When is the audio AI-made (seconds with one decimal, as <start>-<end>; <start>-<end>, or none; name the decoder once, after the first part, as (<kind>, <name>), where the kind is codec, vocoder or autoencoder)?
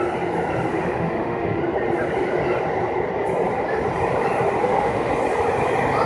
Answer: 0.7-1.6 (autoencoder, DAC-VAE); 4.6-5.1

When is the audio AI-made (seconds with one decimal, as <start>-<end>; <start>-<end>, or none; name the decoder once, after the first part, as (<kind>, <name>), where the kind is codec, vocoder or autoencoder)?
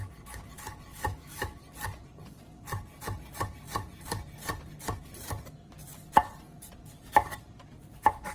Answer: 0.9-1.6 (autoencoder, DAC-VAE)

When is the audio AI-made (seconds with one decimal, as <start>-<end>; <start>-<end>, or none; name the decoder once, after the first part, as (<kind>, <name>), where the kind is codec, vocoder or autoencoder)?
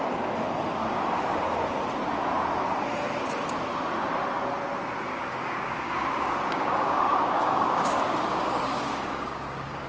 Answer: 5.1-9.9 (codec, DAC)